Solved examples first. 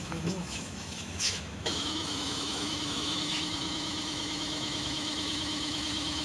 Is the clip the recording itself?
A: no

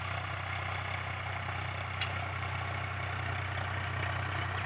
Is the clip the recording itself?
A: yes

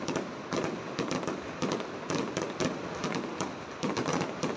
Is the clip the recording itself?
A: yes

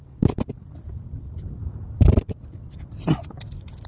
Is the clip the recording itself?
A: no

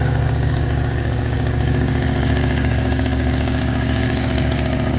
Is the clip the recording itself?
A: no